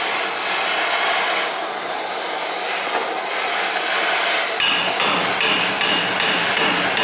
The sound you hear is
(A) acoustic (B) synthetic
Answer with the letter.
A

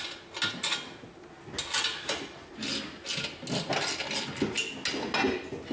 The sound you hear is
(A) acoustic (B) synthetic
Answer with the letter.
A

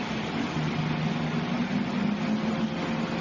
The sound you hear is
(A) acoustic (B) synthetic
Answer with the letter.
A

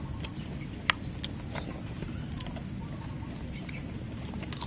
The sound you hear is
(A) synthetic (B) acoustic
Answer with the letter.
B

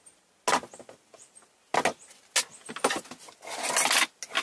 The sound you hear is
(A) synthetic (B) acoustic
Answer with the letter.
B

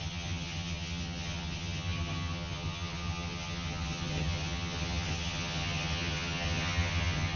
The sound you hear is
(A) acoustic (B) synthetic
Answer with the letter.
B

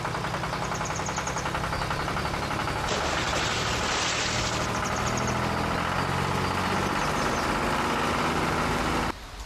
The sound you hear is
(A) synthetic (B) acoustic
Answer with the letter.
B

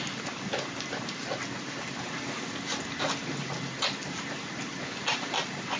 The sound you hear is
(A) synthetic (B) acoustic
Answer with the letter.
B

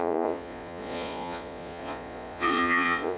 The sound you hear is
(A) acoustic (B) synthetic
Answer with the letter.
B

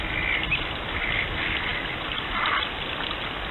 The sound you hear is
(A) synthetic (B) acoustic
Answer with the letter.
B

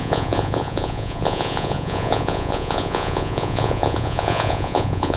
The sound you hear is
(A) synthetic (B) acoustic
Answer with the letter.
A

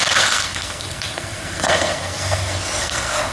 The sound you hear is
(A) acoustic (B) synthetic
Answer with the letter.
B